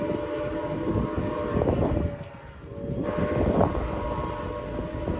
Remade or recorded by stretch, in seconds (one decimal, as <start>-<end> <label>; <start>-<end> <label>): 0.0-5.2 recorded